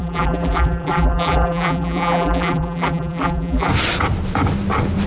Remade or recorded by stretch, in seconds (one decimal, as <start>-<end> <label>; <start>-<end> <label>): 0.0-3.7 remade; 3.7-5.1 recorded